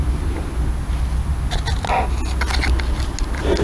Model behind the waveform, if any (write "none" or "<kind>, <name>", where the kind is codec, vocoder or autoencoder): none